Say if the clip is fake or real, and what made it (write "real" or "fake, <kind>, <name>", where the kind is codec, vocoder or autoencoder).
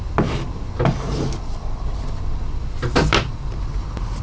real